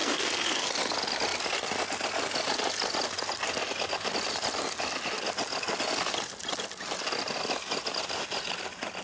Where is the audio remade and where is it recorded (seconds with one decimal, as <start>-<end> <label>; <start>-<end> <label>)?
0.0-0.7 remade; 0.7-9.0 recorded